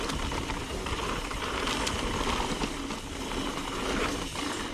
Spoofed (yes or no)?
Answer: no